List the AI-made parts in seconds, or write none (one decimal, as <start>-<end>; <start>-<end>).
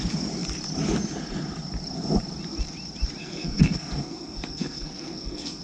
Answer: 3.2-5.6